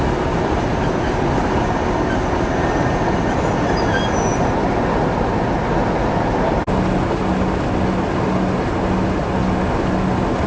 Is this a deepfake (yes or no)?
no